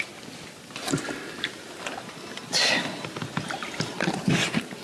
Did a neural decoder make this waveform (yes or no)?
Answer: no